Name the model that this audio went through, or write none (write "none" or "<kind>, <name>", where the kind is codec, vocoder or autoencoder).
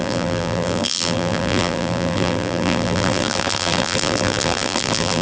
vocoder, BigVGAN v2